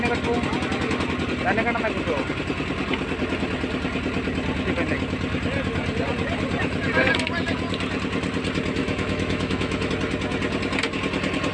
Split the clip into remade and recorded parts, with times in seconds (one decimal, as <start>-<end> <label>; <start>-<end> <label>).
0.0-8.8 recorded; 8.8-9.9 remade; 9.9-11.5 recorded